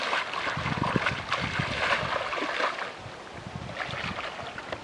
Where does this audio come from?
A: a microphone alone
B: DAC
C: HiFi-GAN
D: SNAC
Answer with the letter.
A